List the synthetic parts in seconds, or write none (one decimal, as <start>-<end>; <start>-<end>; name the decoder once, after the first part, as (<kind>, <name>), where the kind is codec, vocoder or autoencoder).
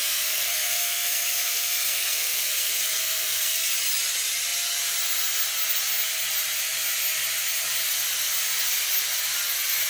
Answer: 0.0-3.7 (codec, SNAC)